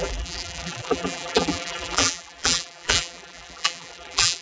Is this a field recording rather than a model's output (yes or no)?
no